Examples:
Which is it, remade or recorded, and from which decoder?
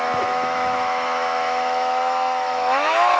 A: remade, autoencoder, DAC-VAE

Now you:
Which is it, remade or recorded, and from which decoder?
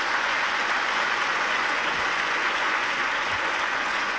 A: remade, vocoder, Vocos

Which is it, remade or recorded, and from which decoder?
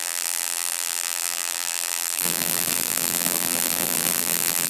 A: remade, vocoder, BigVGAN v2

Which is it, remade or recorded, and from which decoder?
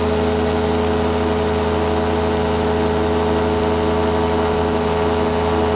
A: recorded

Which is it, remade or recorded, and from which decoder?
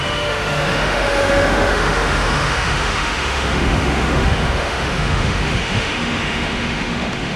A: remade, autoencoder, DAC-VAE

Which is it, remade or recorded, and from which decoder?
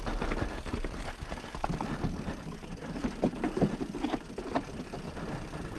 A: recorded